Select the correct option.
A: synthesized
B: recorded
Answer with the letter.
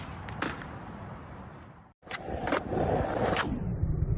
A